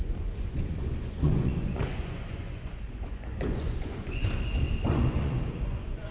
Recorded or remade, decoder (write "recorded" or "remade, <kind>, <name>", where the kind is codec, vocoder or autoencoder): remade, vocoder, Vocos